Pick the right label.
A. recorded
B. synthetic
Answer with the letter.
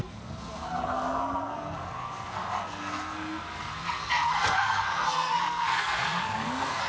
B